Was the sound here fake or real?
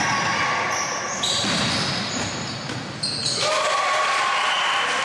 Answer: real